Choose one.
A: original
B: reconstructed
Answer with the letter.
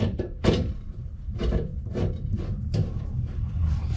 B